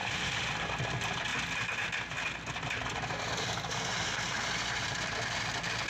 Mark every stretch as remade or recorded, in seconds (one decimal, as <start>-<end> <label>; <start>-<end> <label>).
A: 0.0-0.7 remade; 0.7-5.9 recorded